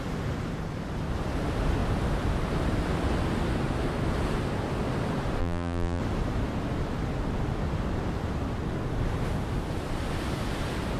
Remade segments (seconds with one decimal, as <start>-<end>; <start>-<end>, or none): 5.4-6.0